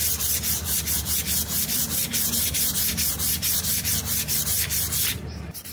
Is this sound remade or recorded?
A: remade